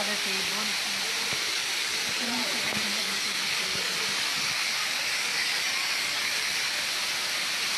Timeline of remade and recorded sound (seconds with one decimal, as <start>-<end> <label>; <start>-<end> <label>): 0.0-1.5 recorded; 1.5-2.5 remade; 2.5-2.9 recorded; 2.9-6.7 remade; 6.7-7.8 recorded